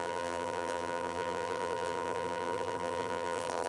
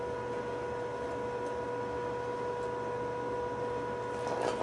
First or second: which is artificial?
first